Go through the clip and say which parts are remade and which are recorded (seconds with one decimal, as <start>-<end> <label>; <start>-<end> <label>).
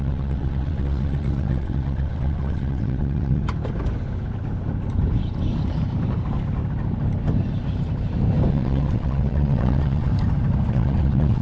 0.0-3.4 remade; 3.4-8.5 recorded; 8.5-10.1 remade; 10.1-10.7 recorded; 10.7-11.4 remade